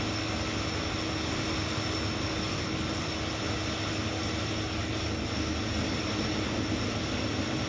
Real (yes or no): yes